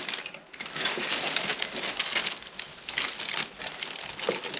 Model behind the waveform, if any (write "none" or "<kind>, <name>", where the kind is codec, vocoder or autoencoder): none